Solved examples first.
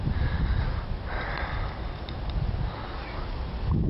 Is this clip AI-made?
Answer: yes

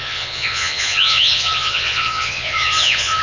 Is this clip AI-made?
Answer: yes